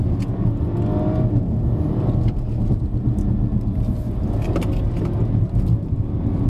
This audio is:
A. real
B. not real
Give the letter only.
A